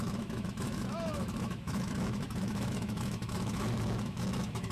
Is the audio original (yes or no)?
no